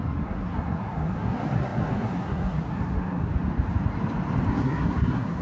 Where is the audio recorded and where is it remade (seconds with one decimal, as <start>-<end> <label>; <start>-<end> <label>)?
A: 0.0-3.3 remade; 3.3-4.5 recorded; 4.5-5.4 remade